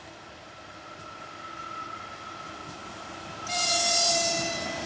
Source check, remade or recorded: recorded